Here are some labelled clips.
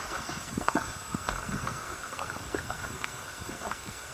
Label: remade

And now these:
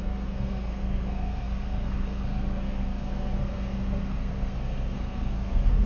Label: remade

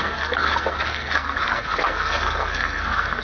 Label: remade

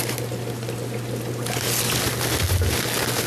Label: recorded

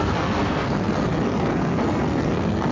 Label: remade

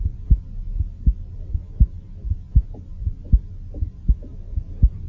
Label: recorded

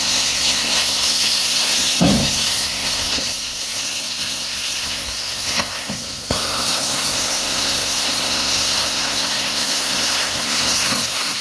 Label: remade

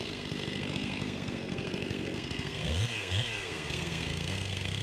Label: remade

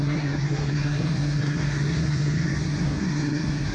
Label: remade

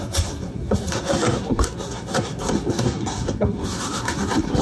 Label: remade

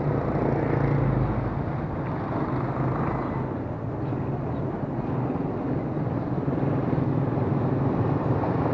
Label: recorded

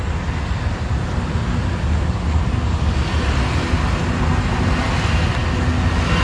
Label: recorded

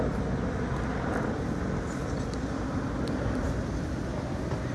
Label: recorded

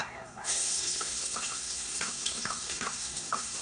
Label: remade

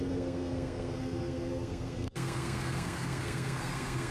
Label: remade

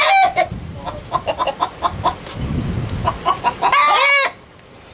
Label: recorded